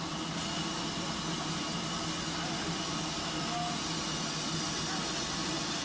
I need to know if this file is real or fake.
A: real